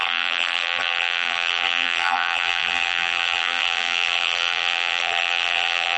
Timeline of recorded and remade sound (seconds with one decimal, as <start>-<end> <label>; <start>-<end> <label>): 0.0-6.0 remade